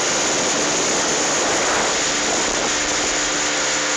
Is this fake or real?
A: real